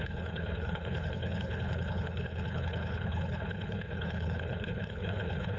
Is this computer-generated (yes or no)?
yes